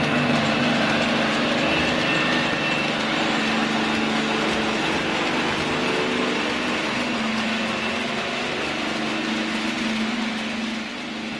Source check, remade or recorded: recorded